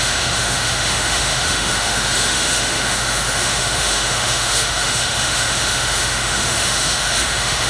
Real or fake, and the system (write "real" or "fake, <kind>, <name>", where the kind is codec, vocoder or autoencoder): fake, autoencoder, DAC-VAE